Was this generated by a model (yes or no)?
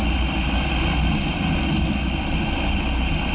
no